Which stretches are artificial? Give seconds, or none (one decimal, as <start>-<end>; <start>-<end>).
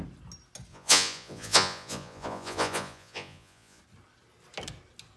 0.7-3.8